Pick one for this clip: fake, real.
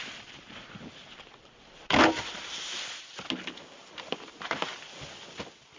real